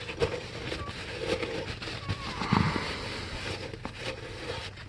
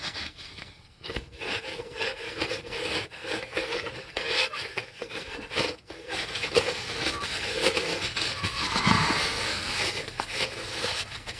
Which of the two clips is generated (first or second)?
second